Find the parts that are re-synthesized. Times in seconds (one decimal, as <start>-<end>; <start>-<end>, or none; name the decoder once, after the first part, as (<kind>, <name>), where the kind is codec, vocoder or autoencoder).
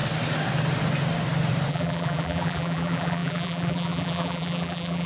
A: 1.7-5.1 (vocoder, BigVGAN v2)